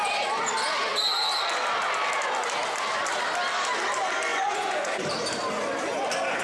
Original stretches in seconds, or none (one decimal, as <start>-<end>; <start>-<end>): 0.0-4.3; 5.0-6.4

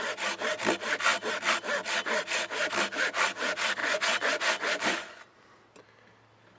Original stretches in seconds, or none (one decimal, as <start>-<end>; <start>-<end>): 0.0-3.8; 5.2-6.6

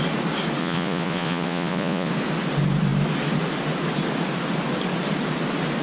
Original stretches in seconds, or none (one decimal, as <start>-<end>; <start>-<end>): 0.0-0.6; 2.1-5.8

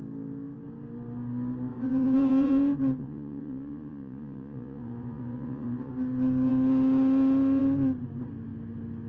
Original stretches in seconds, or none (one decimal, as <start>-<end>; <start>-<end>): 0.0-1.7; 5.9-9.1